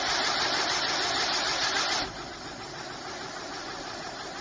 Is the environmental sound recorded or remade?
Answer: recorded